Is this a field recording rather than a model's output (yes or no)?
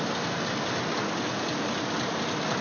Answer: yes